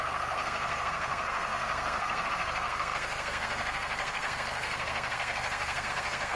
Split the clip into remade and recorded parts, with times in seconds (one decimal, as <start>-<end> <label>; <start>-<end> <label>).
0.0-6.4 remade